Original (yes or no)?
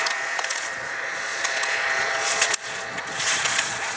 no